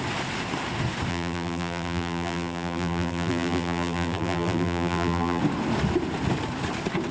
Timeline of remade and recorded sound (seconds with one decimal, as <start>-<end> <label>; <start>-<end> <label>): 0.0-1.1 recorded; 1.1-5.4 remade; 5.4-7.1 recorded